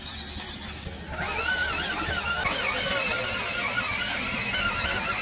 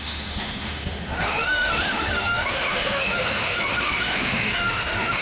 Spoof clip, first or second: second